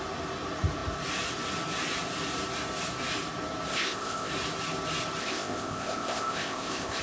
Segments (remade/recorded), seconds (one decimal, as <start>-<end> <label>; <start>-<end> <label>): 0.0-3.7 recorded; 3.7-4.3 remade; 4.3-5.2 recorded; 5.2-7.0 remade